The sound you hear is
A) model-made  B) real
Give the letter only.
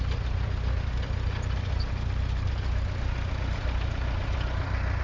B